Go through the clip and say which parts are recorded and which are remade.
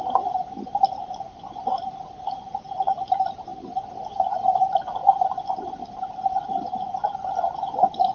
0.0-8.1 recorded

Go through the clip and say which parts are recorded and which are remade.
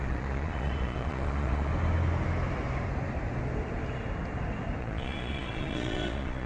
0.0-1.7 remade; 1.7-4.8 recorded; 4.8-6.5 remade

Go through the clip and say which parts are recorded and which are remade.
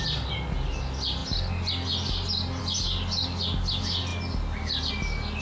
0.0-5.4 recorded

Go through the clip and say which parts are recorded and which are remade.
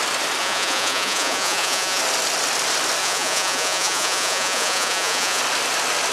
0.0-0.4 recorded; 0.4-2.0 remade; 2.0-3.0 recorded; 3.0-5.4 remade; 5.4-6.1 recorded